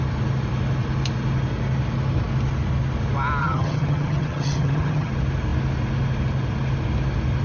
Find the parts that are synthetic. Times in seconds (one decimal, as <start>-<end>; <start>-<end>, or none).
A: 3.4-5.1